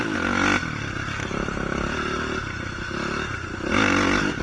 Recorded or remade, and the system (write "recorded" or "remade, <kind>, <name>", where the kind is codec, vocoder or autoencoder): recorded